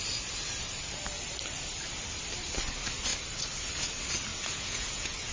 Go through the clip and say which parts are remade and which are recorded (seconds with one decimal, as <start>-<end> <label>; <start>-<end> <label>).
0.0-4.3 recorded; 4.3-5.3 remade